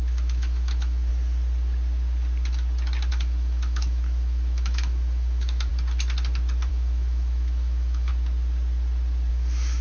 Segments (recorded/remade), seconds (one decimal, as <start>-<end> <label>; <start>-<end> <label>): 0.0-1.1 remade; 1.1-3.1 recorded; 3.1-5.7 remade; 5.7-6.7 recorded; 6.7-8.1 remade; 8.1-9.3 recorded; 9.3-9.8 remade